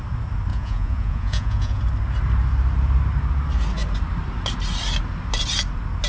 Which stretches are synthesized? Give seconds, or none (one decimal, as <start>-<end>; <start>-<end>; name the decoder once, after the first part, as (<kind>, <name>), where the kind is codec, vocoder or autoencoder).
0.5-1.8 (vocoder, Vocos)